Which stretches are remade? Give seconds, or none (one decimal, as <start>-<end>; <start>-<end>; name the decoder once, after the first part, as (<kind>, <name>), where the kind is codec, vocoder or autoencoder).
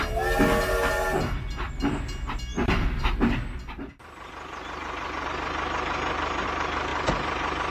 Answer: none